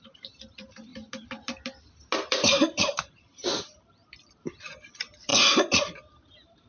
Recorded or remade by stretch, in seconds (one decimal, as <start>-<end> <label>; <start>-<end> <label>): 0.0-0.9 remade; 0.9-2.2 recorded; 2.2-3.5 remade; 3.5-4.3 recorded; 4.3-5.3 remade; 5.3-6.0 recorded; 6.0-6.7 remade